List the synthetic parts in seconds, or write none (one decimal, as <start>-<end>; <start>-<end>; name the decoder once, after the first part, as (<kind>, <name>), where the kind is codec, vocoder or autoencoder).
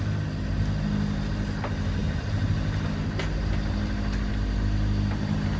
none